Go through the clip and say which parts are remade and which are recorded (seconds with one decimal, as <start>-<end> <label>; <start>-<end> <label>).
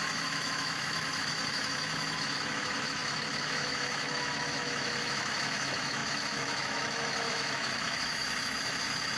0.0-9.2 remade